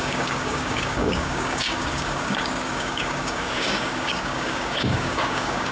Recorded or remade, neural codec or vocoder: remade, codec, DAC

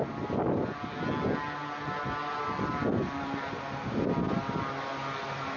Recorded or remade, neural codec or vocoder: recorded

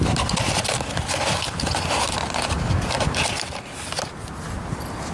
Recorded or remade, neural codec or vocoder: recorded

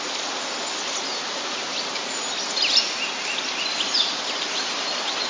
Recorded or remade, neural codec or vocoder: recorded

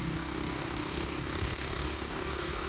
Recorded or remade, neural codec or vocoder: remade, codec, DAC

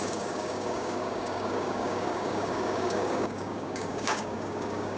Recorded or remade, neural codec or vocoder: remade, codec, DAC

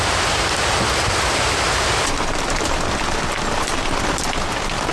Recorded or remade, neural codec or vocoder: recorded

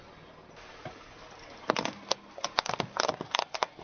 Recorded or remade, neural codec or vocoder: recorded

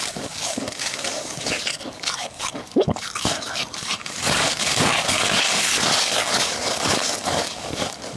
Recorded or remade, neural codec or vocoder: remade, codec, DAC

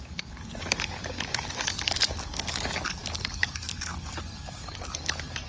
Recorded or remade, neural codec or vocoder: remade, codec, DAC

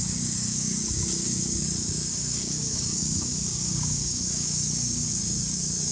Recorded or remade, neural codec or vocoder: remade, codec, DAC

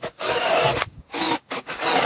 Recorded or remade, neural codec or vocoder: remade, codec, DAC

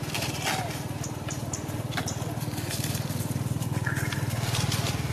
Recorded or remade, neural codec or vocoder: recorded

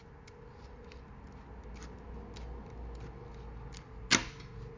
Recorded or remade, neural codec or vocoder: recorded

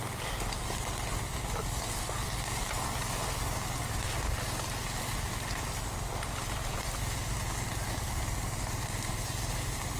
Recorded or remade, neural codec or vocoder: recorded